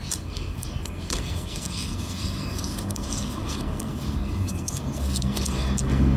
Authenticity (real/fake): fake